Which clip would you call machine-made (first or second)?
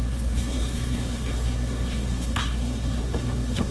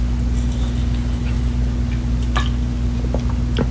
first